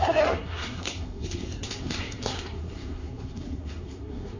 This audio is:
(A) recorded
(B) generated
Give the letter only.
B